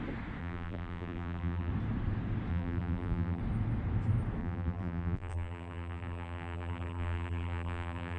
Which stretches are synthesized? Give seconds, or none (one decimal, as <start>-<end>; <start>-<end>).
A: 0.4-1.7; 2.5-3.4; 4.4-8.2